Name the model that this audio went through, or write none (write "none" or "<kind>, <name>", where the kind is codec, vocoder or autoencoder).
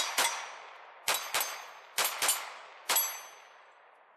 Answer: none